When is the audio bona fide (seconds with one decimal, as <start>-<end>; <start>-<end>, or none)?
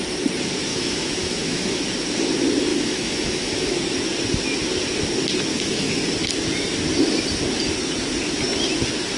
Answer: 0.0-0.7; 1.8-2.7; 3.8-5.5; 6.0-9.2